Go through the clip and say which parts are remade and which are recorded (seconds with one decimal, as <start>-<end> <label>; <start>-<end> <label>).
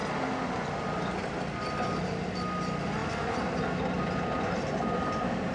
0.0-3.0 recorded; 3.0-3.5 remade; 3.5-5.5 recorded